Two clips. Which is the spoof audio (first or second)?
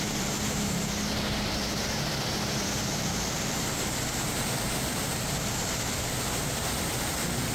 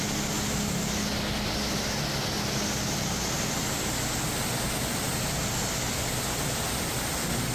first